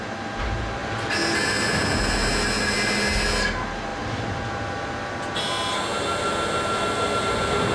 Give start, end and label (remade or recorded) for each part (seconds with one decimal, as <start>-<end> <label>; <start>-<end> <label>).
0.0-7.7 recorded